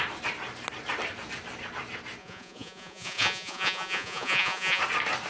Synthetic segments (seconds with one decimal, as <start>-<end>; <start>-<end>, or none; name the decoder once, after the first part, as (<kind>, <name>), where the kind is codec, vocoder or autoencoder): 2.2-4.8 (vocoder, Vocos)